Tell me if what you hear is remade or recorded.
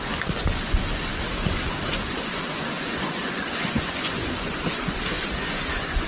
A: remade